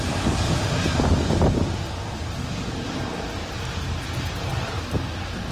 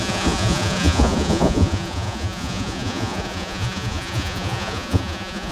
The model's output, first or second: second